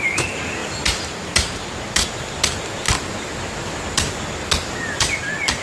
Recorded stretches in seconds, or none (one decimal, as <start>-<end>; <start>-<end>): 0.0-5.6